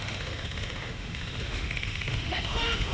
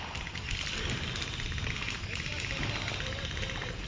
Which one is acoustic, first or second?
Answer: second